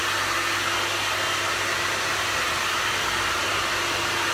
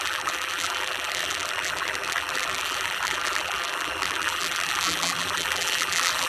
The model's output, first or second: second